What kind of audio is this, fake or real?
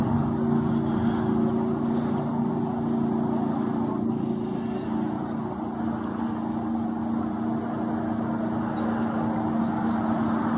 real